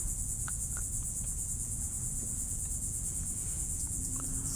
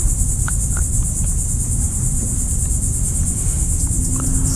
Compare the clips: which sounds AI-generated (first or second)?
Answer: first